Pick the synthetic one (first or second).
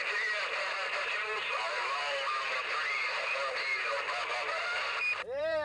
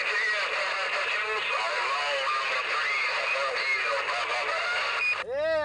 first